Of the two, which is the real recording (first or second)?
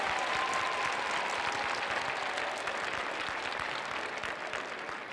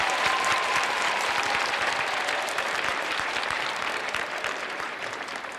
first